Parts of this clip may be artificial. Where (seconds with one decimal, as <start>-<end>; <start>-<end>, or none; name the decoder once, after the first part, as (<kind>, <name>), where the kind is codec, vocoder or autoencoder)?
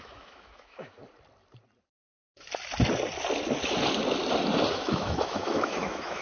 0.0-1.0 (autoencoder, DAC-VAE); 4.7-6.2